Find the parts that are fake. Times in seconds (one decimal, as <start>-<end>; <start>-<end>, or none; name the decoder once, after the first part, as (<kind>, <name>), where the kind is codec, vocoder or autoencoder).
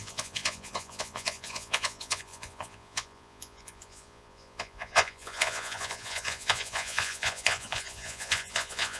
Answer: 0.0-9.0 (vocoder, Vocos)